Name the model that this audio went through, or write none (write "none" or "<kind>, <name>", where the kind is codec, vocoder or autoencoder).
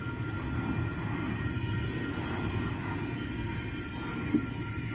none